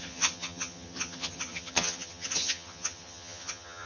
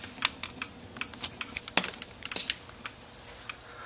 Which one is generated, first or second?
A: first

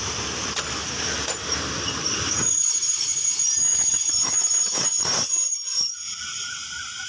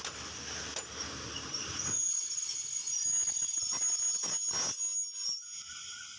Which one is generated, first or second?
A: first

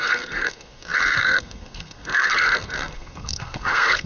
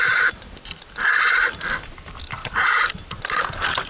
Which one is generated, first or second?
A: first